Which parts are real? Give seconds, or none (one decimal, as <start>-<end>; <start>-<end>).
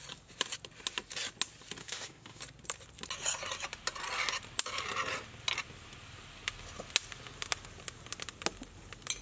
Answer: 0.0-1.8; 2.4-9.2